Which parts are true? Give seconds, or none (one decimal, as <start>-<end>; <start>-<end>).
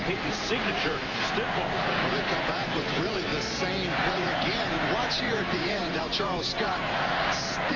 3.3-4.1